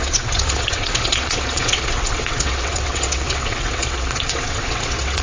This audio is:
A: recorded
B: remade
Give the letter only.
B